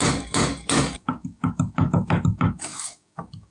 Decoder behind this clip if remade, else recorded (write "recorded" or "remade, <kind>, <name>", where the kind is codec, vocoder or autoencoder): remade, codec, DAC